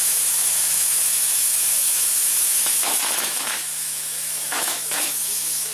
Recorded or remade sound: remade